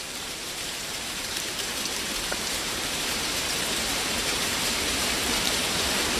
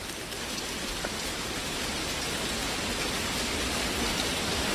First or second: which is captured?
second